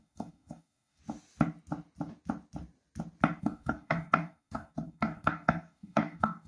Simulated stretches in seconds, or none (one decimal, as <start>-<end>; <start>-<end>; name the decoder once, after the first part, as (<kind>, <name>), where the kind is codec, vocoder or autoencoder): 0.0-1.0 (codec, DAC); 3.4-6.5